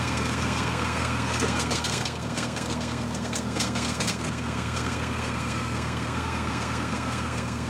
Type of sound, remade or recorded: remade